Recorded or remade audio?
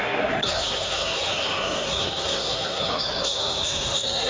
remade